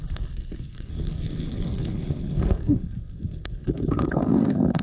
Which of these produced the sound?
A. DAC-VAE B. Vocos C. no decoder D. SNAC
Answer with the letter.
D